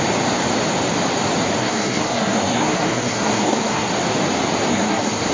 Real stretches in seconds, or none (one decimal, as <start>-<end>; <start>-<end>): 0.0-1.6; 3.9-4.7